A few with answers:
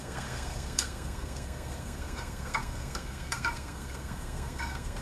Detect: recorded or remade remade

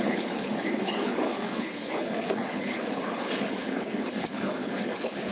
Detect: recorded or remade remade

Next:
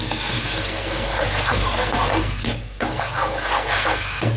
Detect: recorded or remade remade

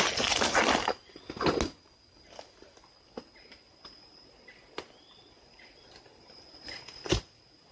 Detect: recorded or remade recorded